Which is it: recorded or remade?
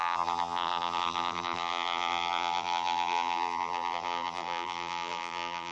remade